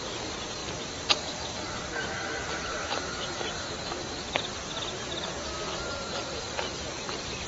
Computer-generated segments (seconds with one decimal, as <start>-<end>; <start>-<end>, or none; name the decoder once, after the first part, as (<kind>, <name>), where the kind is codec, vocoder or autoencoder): none